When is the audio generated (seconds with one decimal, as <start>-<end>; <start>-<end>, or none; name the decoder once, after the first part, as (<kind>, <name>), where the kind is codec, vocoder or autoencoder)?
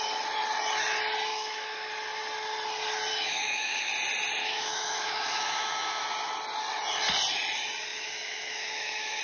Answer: 1.3-1.9 (autoencoder, DAC-VAE); 3.1-3.9; 4.4-6.0; 7.9-9.2